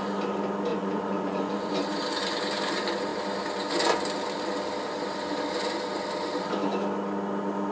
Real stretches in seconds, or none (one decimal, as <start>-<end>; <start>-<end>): 0.0-0.7; 1.7-7.7